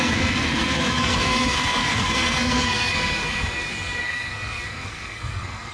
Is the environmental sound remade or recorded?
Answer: remade